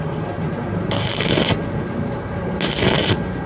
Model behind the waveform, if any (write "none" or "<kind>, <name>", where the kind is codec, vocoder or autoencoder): none